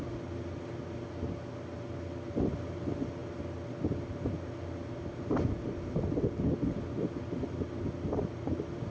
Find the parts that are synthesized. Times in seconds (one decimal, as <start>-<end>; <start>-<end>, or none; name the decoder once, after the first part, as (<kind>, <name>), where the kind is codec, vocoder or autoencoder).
none